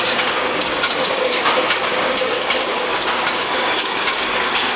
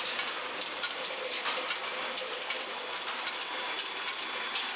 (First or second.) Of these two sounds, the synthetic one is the first